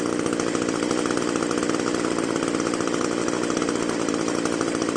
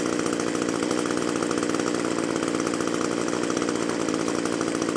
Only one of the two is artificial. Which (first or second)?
first